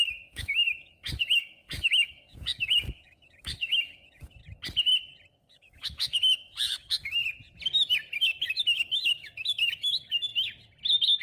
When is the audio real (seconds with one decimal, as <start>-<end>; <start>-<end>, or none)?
4.4-5.4; 7.2-8.2; 10.3-11.2